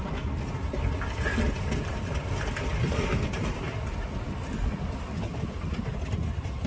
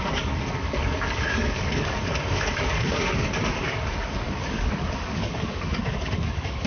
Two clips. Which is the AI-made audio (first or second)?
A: second